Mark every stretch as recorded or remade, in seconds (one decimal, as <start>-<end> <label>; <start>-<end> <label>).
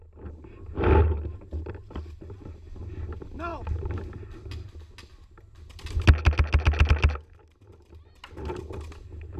0.0-9.4 recorded